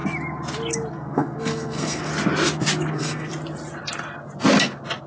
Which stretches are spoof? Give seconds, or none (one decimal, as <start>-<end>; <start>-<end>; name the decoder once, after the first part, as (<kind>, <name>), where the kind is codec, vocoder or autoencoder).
0.9-2.1 (codec, SNAC); 2.9-3.3

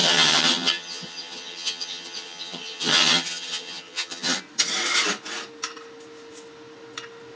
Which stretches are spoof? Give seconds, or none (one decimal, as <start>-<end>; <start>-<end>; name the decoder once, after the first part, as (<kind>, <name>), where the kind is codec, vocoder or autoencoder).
0.0-4.4 (vocoder, HiFi-GAN)

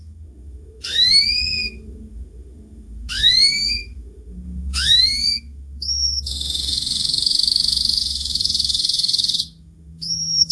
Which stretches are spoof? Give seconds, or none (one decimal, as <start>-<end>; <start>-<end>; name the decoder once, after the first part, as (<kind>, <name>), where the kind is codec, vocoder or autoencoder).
0.0-10.5 (autoencoder, DAC-VAE)

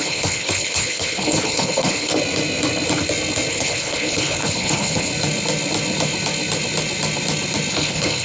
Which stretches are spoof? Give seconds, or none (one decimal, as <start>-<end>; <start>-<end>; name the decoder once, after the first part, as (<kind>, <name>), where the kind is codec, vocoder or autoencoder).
0.0-2.1 (codec, HILCodec); 3.5-5.1; 7.7-8.2